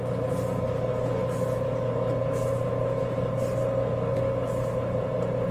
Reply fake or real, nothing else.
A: real